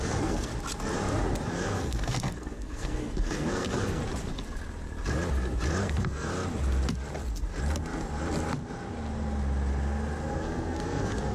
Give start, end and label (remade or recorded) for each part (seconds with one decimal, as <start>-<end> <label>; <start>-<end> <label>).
0.0-0.5 remade; 0.5-1.5 recorded; 1.5-4.0 remade; 4.0-5.8 recorded; 5.8-6.3 remade; 6.3-10.3 recorded; 10.3-11.3 remade